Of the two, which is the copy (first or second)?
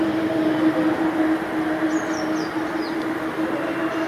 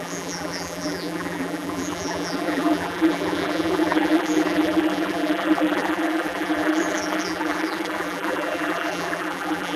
second